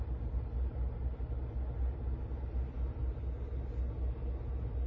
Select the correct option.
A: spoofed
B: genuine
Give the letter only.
B